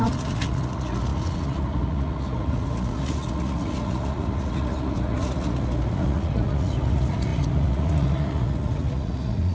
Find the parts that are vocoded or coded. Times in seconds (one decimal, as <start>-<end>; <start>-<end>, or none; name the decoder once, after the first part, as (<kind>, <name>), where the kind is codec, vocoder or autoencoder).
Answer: 0.0-9.5 (vocoder, Vocos)